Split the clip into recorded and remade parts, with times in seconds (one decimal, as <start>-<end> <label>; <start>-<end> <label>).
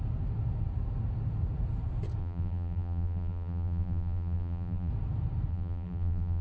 0.0-2.2 recorded; 2.2-4.9 remade; 4.9-5.5 recorded; 5.5-6.4 remade